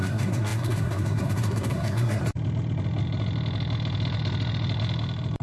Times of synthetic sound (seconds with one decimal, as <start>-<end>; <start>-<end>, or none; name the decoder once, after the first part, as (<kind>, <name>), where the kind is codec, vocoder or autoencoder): 0.0-2.2 (codec, SNAC)

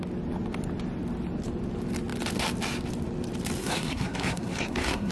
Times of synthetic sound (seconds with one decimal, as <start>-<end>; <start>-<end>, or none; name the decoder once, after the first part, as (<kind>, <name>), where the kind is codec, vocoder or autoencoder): 3.6-5.1 (codec, SNAC)